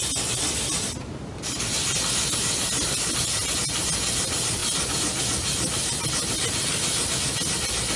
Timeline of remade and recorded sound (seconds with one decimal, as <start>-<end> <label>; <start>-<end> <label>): 0.0-8.0 recorded